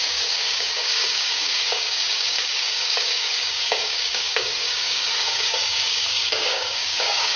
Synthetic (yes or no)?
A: yes